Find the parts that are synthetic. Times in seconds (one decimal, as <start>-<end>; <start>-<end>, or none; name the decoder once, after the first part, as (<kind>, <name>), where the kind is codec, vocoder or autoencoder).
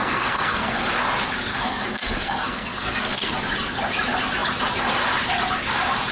0.0-0.9 (codec, SNAC); 1.5-3.3